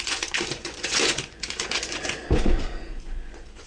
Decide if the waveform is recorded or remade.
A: remade